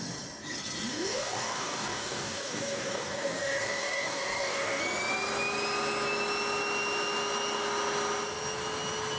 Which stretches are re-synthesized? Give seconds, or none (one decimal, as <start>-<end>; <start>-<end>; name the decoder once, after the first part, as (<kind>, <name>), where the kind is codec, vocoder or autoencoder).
0.9-4.8 (codec, DAC)